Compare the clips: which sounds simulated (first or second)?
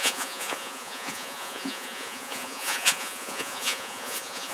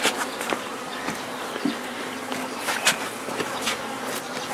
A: first